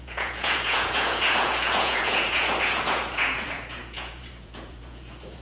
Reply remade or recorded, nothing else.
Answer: remade